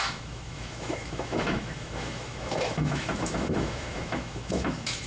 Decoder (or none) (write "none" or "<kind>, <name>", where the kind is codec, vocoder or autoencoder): autoencoder, DAC-VAE